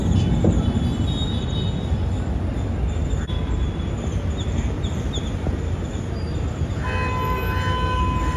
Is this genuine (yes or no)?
yes